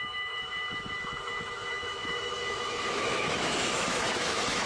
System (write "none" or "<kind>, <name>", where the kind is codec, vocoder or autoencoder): autoencoder, DAC-VAE